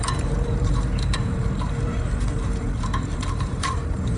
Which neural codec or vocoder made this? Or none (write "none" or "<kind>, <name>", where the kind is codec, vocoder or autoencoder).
vocoder, BigVGAN v2